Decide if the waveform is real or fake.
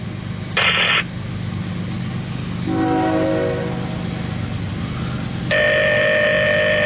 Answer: real